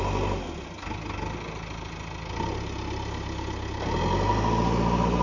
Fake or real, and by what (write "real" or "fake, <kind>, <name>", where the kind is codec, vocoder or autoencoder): real